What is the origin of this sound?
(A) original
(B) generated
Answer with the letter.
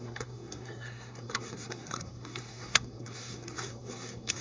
B